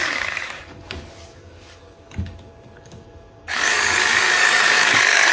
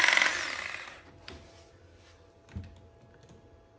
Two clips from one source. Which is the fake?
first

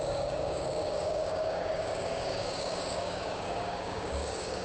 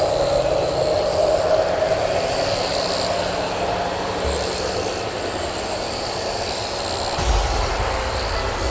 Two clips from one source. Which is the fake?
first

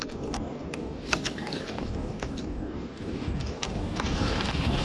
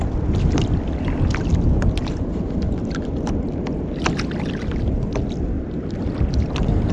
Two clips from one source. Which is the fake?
first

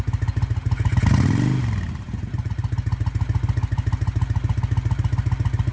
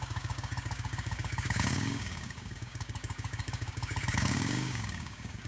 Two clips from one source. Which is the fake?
second